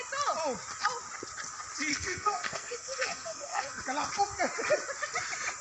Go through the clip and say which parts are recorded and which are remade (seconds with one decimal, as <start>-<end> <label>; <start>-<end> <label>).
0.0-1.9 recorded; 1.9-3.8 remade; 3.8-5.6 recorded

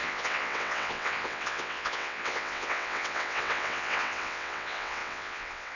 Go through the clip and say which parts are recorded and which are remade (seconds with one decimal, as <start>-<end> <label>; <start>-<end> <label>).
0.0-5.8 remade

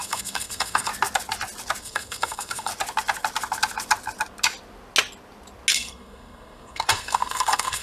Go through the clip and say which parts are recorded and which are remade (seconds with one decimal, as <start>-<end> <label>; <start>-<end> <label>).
0.0-0.9 remade; 0.9-1.8 recorded; 1.8-2.7 remade; 2.7-5.7 recorded; 5.7-7.8 remade

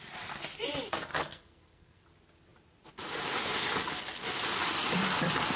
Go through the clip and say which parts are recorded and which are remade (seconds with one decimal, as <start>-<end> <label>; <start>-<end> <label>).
0.0-1.1 recorded; 1.1-2.0 remade; 2.0-5.6 recorded